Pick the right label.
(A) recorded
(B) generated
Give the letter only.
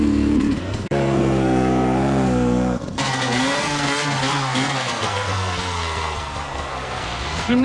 B